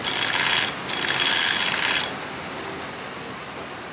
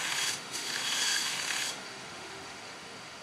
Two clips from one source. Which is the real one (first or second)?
first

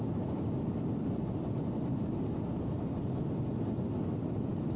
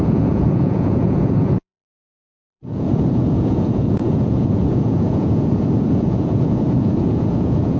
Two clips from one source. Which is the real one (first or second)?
first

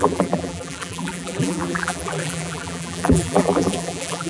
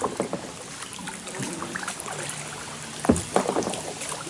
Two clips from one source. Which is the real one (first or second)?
second